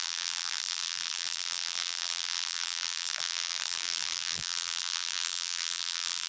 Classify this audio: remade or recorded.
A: remade